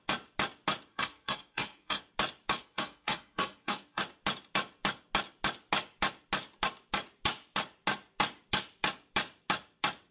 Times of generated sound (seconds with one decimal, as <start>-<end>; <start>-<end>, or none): 0.9-2.0; 2.6-4.0